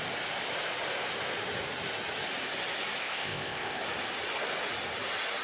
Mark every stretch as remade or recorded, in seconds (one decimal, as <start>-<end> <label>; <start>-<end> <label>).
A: 0.0-3.0 recorded; 3.0-3.8 remade; 3.8-5.4 recorded